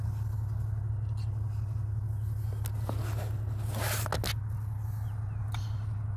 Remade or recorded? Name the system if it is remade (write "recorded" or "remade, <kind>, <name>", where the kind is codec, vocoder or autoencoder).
recorded